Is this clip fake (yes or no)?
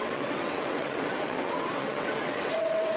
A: yes